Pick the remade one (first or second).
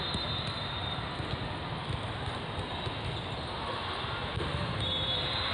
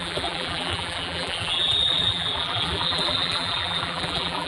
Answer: second